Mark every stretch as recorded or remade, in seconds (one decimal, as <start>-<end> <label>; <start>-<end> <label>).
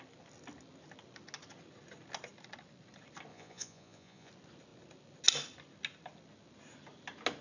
0.0-3.3 recorded; 3.3-4.3 remade; 4.3-7.4 recorded